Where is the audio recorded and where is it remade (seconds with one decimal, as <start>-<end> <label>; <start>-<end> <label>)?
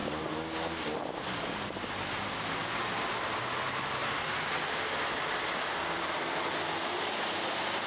0.0-7.9 recorded